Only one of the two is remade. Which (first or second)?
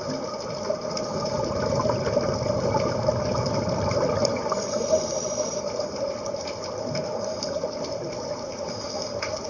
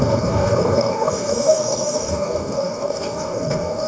second